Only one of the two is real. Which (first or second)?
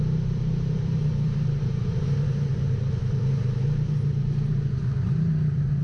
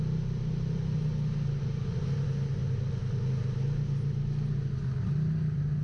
second